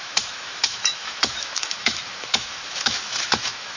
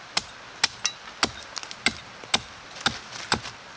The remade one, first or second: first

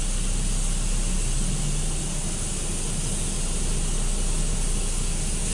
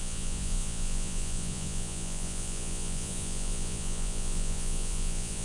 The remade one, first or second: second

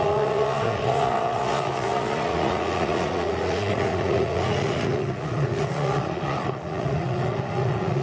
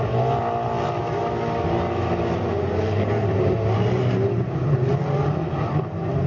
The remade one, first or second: first